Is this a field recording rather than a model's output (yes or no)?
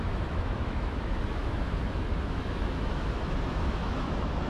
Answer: no